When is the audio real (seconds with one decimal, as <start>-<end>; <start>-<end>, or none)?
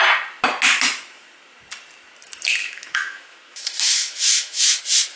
0.0-2.6; 4.8-5.2